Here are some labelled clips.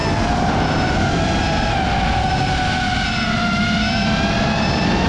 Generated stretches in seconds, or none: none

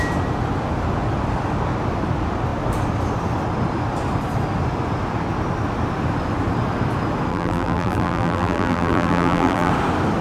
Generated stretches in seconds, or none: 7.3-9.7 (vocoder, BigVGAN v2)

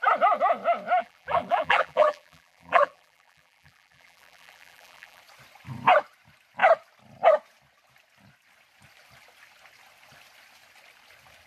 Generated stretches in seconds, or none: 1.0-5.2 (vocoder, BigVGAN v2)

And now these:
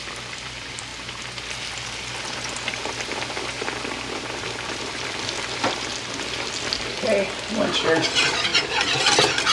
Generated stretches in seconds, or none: 0.0-0.9 (vocoder, BigVGAN v2); 4.7-5.9; 6.9-8.5; 9.0-9.5

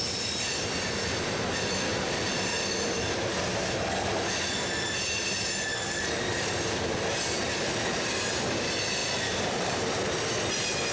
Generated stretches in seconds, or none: 1.9-3.6 (vocoder, BigVGAN v2); 5.7-6.5; 9.0-9.8

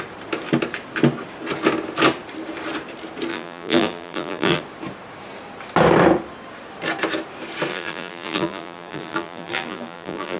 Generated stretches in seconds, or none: 3.3-4.6 (vocoder, BigVGAN v2); 7.7-10.4

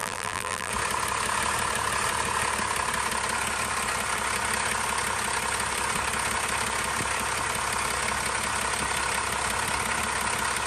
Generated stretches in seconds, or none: 0.0-0.7 (vocoder, BigVGAN v2)